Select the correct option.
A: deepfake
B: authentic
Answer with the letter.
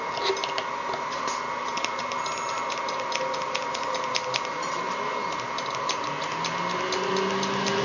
B